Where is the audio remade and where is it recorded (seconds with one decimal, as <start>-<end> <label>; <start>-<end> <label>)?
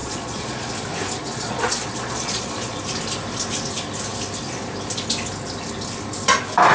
0.0-0.7 remade; 0.7-1.2 recorded; 1.2-2.8 remade; 2.8-6.7 recorded